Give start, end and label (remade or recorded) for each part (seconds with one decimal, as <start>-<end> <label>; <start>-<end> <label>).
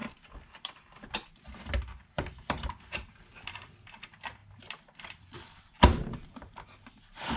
0.0-7.4 remade